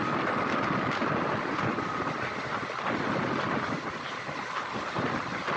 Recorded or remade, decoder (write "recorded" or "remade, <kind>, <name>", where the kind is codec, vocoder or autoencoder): recorded